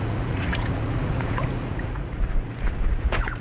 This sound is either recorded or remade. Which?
remade